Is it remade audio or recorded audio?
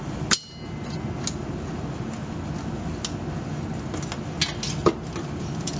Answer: recorded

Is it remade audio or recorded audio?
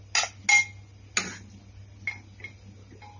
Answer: recorded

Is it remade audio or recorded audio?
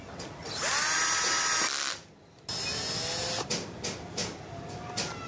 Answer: recorded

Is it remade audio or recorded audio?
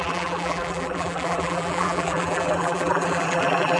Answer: remade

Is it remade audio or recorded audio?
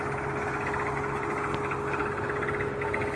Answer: recorded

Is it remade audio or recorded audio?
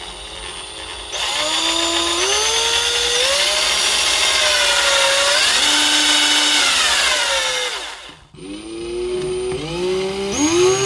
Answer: recorded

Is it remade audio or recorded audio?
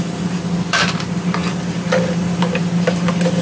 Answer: recorded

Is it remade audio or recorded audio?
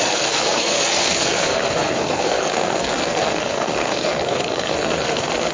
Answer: remade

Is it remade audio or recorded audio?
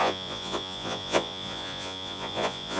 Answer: remade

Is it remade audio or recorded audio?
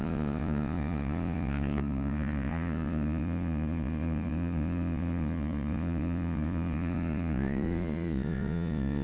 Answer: remade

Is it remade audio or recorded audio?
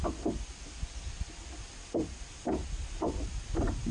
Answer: recorded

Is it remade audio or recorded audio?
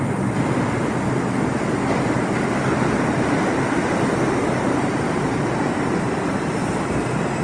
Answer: recorded